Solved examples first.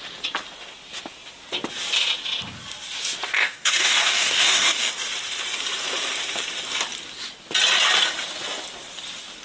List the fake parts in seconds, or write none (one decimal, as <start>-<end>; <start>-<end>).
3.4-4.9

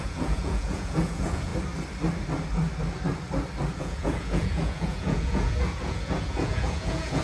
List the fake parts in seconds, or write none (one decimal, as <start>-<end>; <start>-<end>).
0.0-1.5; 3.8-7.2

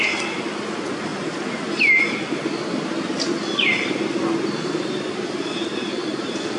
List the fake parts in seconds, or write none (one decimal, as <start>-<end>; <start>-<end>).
none